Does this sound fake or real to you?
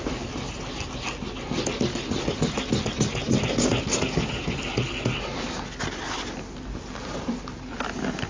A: real